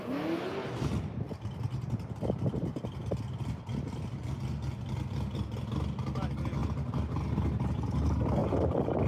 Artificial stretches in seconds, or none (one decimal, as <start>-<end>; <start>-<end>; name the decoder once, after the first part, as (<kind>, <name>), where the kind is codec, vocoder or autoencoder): 8.4-9.1 (vocoder, BigVGAN v2)